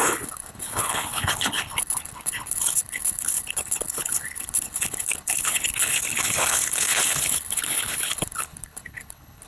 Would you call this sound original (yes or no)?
no